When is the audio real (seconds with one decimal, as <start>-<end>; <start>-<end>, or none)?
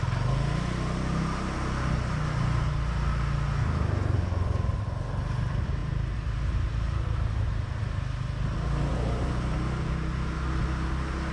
0.0-5.8; 7.5-11.3